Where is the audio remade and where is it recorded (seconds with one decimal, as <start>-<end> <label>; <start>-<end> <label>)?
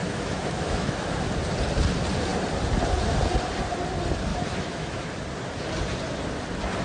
0.0-1.3 remade; 1.3-4.3 recorded; 4.3-5.1 remade; 5.1-6.8 recorded